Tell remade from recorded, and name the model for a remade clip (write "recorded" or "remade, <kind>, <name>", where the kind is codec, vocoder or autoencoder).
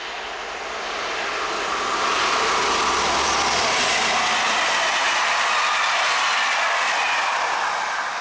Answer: recorded